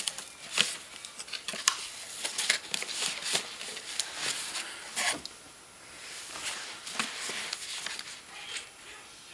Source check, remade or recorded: recorded